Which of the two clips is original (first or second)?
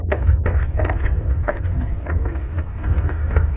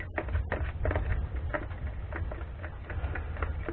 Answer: second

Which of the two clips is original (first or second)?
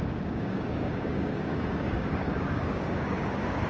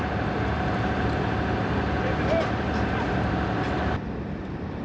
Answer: second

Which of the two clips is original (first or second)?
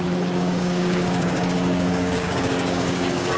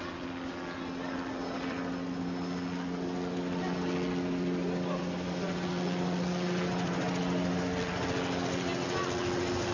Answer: second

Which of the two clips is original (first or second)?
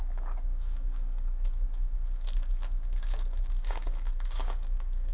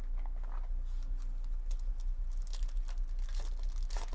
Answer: second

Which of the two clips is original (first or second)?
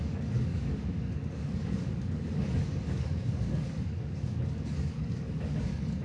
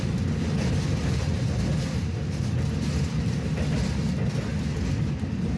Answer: second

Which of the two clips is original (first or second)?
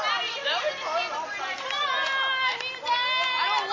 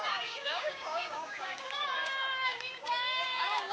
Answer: first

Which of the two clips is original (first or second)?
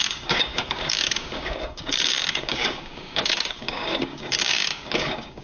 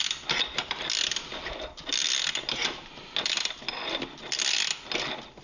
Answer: second